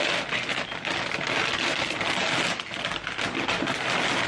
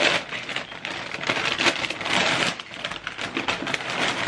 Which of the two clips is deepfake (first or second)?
second